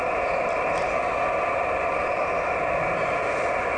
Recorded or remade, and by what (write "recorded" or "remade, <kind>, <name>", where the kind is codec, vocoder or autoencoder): recorded